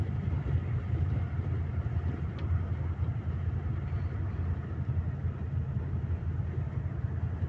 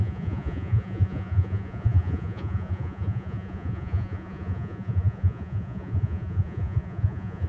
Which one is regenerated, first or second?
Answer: second